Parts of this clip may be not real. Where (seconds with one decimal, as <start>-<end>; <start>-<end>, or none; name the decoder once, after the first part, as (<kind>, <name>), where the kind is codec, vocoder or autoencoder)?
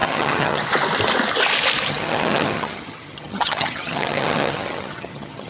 0.0-0.6 (vocoder, HiFi-GAN); 1.9-5.5